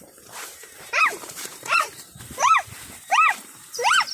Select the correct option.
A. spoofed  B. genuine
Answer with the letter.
A